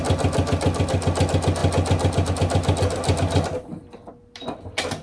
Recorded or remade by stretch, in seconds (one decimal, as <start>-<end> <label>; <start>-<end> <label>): 0.0-5.0 recorded